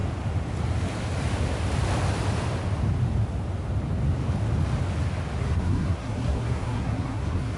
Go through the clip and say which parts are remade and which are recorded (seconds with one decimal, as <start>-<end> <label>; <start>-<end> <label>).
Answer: 0.0-5.4 recorded; 5.4-7.6 remade